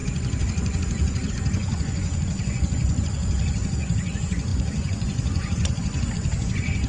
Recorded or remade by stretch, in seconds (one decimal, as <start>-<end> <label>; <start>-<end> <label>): 0.0-6.9 remade